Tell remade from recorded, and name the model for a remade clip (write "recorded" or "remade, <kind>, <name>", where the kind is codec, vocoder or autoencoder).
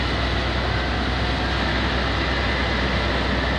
recorded